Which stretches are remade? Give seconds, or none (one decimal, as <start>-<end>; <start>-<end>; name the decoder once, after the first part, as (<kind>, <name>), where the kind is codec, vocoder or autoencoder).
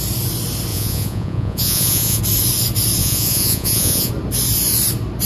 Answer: 0.7-2.2 (vocoder, Vocos); 3.0-4.1